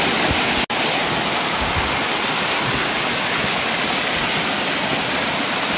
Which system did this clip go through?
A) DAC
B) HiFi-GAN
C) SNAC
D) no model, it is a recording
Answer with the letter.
D